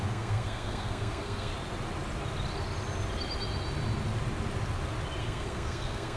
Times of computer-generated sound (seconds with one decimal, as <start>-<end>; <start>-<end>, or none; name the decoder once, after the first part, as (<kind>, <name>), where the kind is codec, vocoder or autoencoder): 0.0-1.5 (codec, SNAC); 5.2-6.2

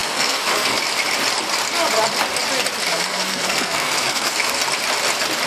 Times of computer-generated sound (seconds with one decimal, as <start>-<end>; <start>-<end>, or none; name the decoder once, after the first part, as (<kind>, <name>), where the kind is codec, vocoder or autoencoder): 0.0-0.8 (codec, SNAC); 2.9-4.6

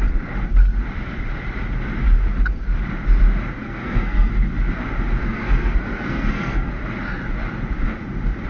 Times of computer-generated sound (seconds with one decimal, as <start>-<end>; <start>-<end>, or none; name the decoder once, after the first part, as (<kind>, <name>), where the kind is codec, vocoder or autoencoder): 3.6-4.3 (codec, SNAC); 5.2-6.7